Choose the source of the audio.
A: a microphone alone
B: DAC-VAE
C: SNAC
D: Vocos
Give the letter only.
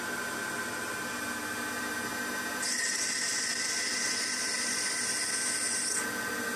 A